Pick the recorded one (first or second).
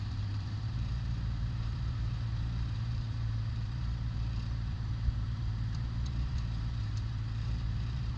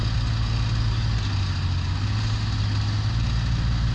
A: second